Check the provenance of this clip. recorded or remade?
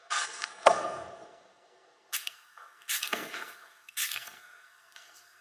remade